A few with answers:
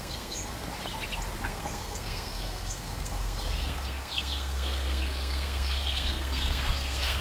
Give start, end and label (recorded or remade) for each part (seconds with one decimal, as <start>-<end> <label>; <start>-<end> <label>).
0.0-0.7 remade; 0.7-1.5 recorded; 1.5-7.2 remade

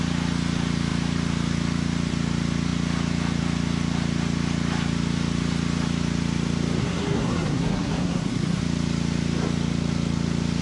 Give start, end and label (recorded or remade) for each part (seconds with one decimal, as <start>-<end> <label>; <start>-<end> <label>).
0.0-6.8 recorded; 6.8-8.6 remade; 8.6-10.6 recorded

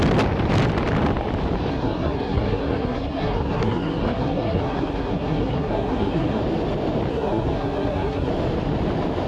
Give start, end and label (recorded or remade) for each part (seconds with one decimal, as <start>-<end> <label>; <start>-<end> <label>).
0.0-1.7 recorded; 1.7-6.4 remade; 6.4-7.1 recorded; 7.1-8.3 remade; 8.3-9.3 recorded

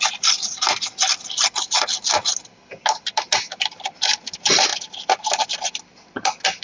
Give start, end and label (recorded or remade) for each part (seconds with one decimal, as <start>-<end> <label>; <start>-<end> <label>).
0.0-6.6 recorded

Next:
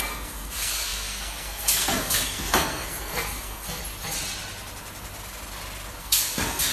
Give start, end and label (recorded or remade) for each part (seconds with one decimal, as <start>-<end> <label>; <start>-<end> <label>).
0.0-3.8 remade; 3.8-6.0 recorded; 6.0-6.7 remade

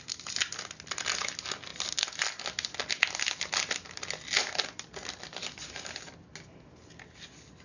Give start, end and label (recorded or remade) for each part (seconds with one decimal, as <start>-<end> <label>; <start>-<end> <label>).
0.0-7.6 recorded